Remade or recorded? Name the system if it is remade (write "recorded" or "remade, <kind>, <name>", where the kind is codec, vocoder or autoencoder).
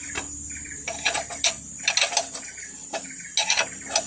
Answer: recorded